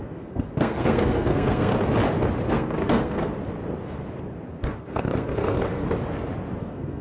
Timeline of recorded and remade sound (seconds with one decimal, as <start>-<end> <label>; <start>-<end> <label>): 0.0-1.7 remade; 1.7-2.5 recorded; 2.5-3.3 remade; 3.3-4.6 recorded; 4.6-5.8 remade; 5.8-6.6 recorded; 6.6-7.0 remade